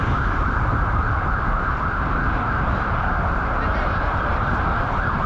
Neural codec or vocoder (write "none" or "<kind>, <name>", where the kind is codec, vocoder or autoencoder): vocoder, BigVGAN v2